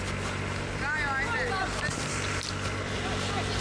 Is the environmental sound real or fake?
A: real